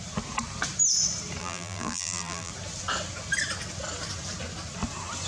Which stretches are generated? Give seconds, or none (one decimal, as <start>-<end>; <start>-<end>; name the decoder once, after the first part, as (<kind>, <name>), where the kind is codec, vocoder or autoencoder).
1.4-2.5 (vocoder, BigVGAN v2)